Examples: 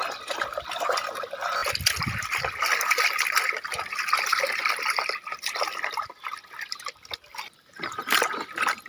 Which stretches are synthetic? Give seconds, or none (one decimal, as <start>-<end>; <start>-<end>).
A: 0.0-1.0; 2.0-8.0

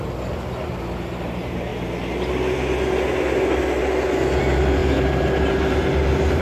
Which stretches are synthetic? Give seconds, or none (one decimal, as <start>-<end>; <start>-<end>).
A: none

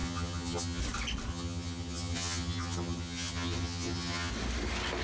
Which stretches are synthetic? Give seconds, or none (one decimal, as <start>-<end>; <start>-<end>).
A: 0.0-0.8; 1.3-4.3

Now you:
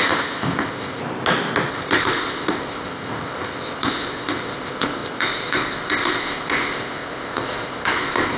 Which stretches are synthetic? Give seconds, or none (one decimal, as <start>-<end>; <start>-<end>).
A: 0.0-1.0; 1.7-8.4

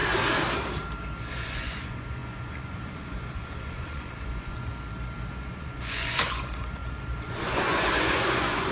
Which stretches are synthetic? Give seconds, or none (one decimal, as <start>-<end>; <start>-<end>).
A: 1.3-4.7; 5.3-8.7